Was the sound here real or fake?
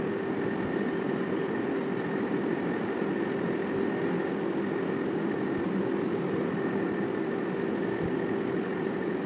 real